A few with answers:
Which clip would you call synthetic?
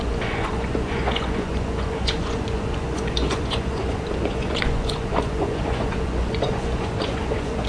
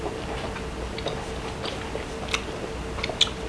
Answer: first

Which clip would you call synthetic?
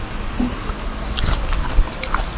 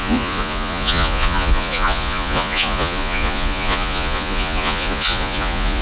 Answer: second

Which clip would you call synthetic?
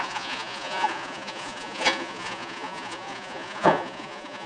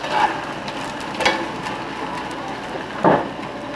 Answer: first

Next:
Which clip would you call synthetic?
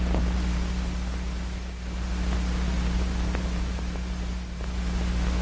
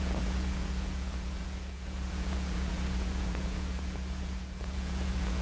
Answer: second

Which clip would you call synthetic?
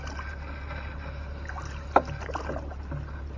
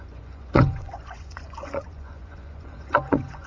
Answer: second